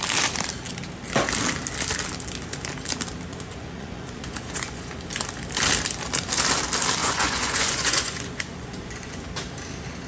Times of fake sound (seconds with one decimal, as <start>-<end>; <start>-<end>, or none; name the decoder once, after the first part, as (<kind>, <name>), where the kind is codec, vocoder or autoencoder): 3.3-5.0 (vocoder, Vocos); 7.0-9.2